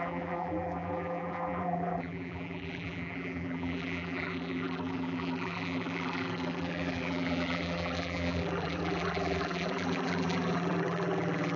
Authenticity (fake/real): fake